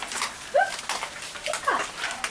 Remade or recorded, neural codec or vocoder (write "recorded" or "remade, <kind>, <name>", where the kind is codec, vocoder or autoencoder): recorded